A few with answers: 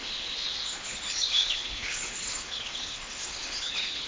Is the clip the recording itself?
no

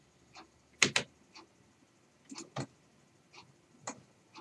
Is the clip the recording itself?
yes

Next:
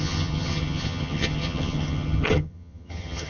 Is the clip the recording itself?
no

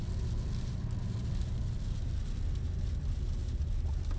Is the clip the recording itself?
yes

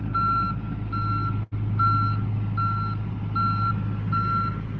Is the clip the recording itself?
yes